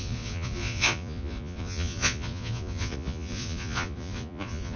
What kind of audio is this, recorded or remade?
remade